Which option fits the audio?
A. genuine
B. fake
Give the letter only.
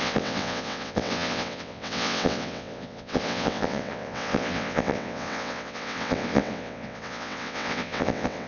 B